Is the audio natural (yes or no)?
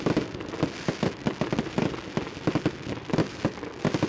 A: yes